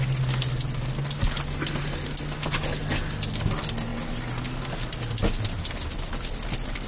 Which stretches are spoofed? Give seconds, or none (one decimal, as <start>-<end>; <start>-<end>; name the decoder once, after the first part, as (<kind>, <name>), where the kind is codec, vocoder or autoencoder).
none